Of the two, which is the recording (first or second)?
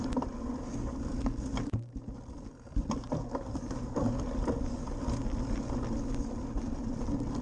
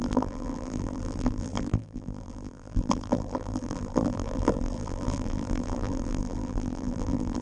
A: first